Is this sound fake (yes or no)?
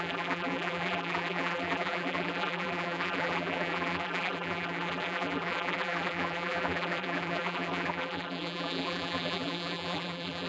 yes